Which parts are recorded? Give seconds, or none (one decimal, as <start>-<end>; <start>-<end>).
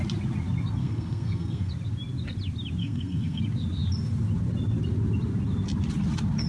0.0-0.8; 1.7-2.8; 3.4-6.5